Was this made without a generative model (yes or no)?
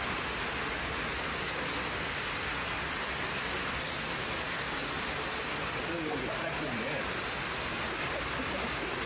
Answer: yes